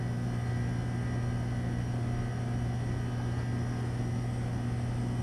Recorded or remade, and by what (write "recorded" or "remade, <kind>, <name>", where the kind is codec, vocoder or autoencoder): recorded